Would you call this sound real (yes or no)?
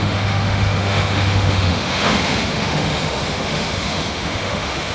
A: no